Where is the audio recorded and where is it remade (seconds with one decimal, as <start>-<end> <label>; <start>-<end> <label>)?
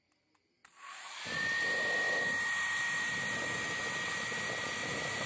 0.0-5.3 recorded